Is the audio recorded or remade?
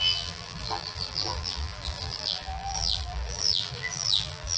remade